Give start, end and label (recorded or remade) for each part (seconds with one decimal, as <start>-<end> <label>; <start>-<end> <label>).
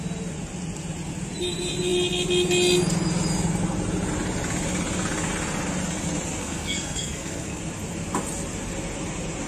0.0-6.4 recorded; 6.4-7.6 remade; 7.6-9.5 recorded